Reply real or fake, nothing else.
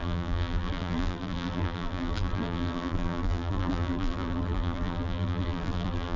fake